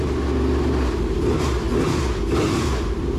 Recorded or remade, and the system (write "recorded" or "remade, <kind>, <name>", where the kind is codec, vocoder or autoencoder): recorded